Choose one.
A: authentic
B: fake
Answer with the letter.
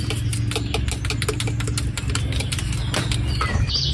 A